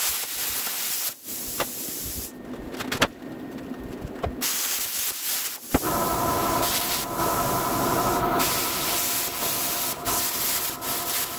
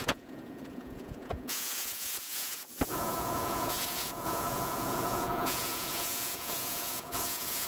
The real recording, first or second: first